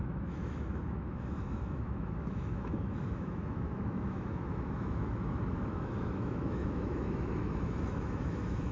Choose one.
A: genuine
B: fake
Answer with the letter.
B